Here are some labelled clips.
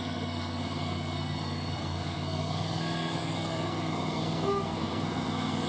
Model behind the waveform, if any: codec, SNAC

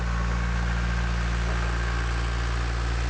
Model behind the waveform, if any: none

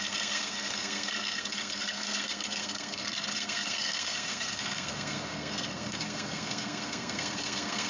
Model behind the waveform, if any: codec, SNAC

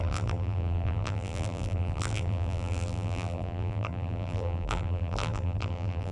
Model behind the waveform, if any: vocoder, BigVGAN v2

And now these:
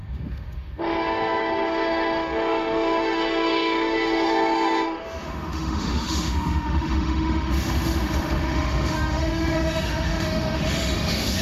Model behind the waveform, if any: autoencoder, DAC-VAE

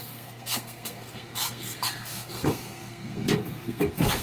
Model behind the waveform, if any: codec, SNAC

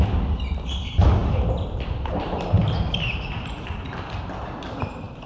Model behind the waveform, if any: none